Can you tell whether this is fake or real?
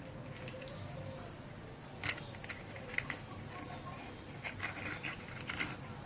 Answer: fake